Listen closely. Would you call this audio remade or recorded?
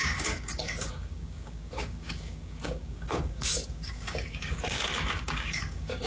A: remade